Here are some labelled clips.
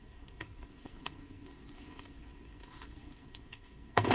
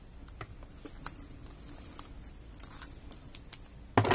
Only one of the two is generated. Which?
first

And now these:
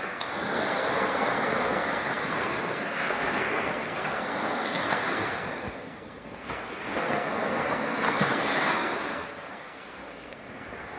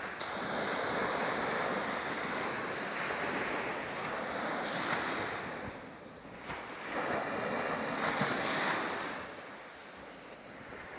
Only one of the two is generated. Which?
first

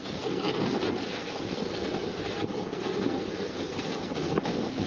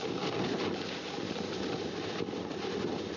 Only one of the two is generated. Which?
first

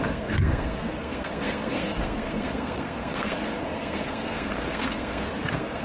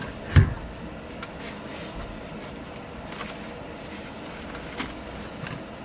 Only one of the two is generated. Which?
first